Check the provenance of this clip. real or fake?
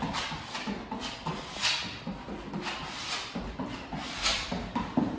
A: real